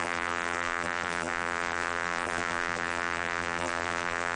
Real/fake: fake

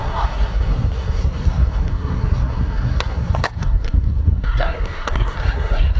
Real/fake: fake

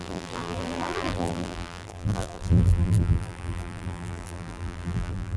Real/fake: fake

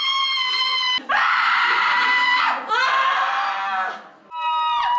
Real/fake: real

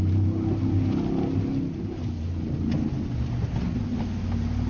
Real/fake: real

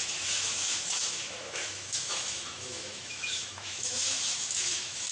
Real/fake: fake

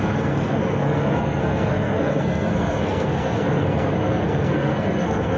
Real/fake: fake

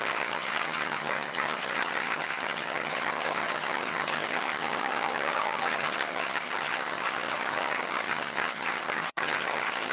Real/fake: fake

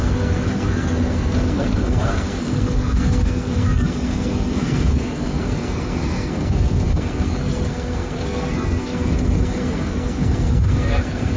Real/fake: fake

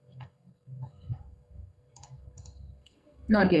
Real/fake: fake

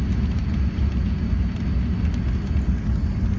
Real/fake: real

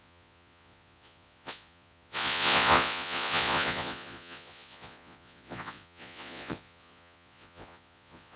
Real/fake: fake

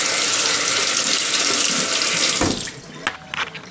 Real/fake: real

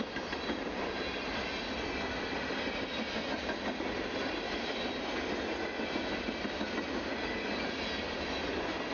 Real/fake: real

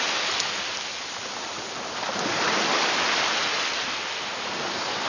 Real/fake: real